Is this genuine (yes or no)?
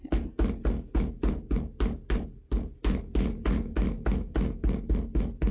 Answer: yes